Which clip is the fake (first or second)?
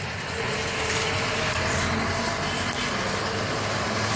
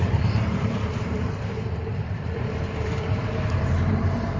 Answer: second